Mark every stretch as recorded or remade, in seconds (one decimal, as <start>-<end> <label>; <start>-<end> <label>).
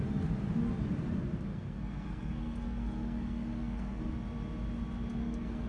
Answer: 0.0-1.5 recorded; 1.5-4.1 remade; 4.1-5.2 recorded; 5.2-5.7 remade